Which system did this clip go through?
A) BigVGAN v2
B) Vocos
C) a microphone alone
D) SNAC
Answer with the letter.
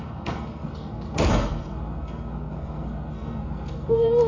D